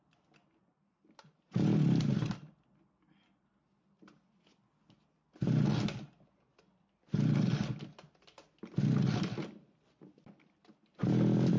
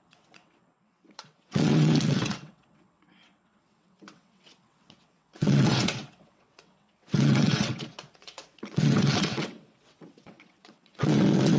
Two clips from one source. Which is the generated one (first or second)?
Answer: second